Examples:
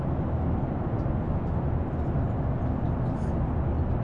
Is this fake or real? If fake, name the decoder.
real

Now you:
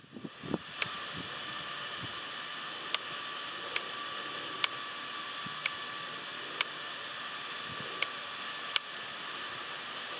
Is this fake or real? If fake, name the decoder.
real